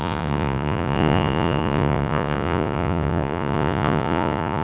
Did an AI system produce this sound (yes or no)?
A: yes